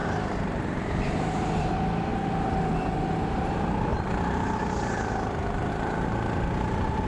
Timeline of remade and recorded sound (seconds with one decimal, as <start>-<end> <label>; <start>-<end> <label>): 0.0-3.9 recorded; 3.9-5.7 remade; 5.7-7.1 recorded